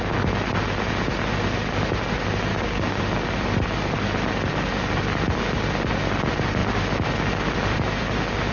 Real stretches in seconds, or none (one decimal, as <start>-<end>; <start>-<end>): 0.0-2.5; 3.0-8.5